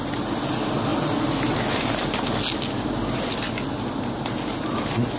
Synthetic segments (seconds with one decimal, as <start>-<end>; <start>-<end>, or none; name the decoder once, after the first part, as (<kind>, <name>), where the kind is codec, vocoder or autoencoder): none